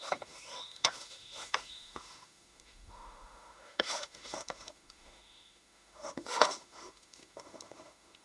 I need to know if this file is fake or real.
fake